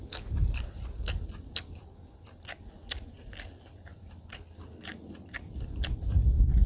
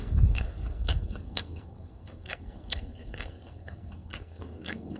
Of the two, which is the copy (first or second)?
second